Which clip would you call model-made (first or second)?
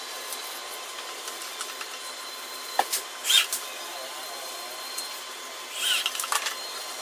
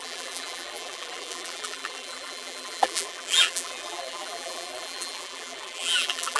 second